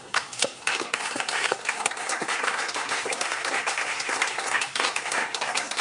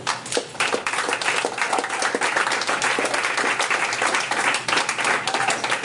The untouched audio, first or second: second